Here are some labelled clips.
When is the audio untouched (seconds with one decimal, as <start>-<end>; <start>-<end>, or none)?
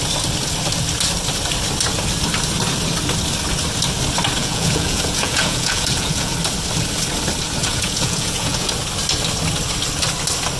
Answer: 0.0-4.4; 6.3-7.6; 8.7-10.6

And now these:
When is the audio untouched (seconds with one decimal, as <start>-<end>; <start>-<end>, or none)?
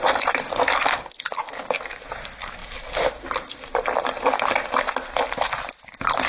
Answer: 0.0-6.3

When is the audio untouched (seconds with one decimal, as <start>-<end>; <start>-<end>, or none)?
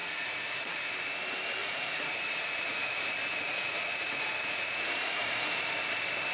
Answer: 0.9-1.6; 5.4-6.3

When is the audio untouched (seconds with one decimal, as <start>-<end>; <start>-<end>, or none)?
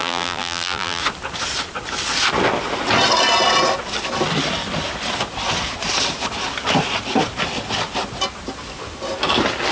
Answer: 1.0-9.7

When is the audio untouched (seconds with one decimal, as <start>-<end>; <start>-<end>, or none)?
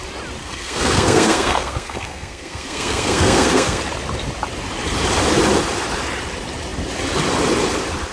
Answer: 0.0-0.4; 3.8-8.1